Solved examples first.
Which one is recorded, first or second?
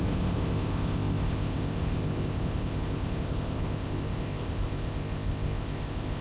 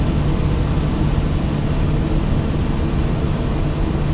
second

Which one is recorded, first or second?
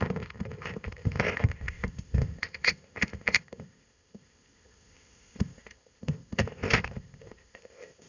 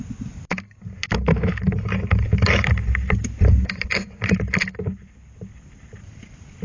second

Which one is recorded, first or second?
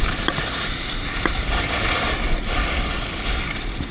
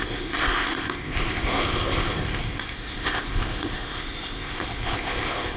first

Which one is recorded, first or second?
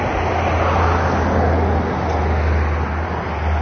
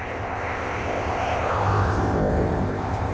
first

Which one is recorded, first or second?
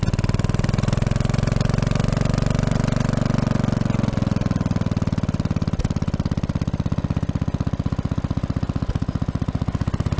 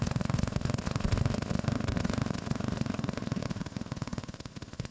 first